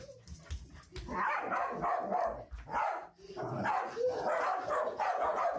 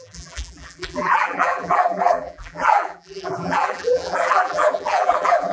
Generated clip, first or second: second